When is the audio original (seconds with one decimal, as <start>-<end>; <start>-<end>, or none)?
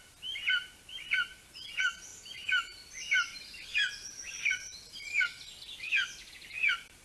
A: 0.0-7.0